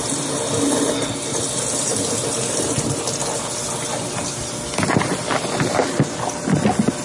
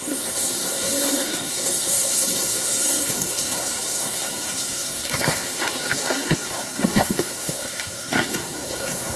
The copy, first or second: second